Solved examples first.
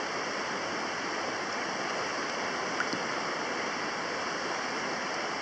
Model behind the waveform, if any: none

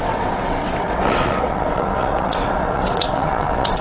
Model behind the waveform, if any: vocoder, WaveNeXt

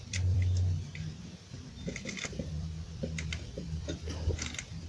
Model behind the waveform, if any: vocoder, BigVGAN v2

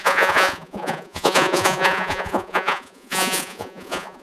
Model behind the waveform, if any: vocoder, Vocos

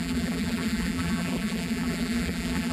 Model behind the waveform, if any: vocoder, BigVGAN v2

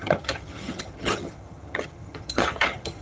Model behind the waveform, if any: vocoder, HiFi-GAN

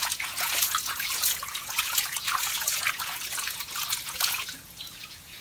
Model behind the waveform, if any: vocoder, Vocos